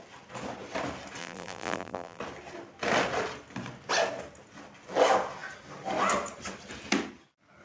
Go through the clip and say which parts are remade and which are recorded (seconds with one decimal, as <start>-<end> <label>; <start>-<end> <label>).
0.0-1.2 recorded; 1.2-2.2 remade; 2.2-7.6 recorded

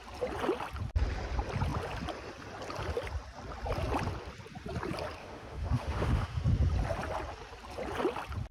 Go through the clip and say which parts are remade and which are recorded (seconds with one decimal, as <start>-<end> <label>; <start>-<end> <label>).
0.0-5.2 recorded; 5.2-6.4 remade; 6.4-8.5 recorded

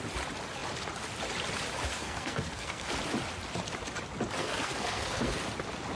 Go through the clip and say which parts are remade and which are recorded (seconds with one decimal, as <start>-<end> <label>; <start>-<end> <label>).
0.0-1.9 recorded; 1.9-2.9 remade; 2.9-4.4 recorded; 4.4-5.4 remade; 5.4-5.9 recorded

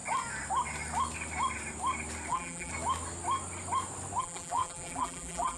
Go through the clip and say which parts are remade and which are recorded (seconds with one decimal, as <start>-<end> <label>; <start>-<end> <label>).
0.0-2.3 recorded; 2.3-2.7 remade; 2.7-4.2 recorded; 4.2-5.6 remade

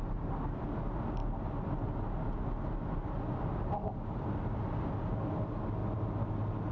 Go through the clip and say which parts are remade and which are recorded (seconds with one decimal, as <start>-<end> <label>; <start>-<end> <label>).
0.0-6.7 recorded

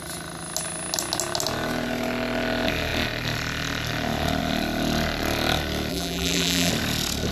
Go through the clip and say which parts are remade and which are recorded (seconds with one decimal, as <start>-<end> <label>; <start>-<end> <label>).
0.0-5.9 recorded; 5.9-6.7 remade; 6.7-7.3 recorded